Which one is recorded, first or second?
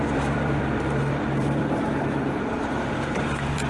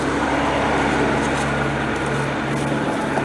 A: second